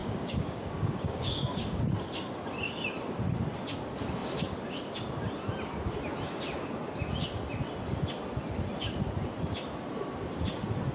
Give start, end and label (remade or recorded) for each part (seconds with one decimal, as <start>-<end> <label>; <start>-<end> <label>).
0.0-1.8 remade; 1.8-10.9 recorded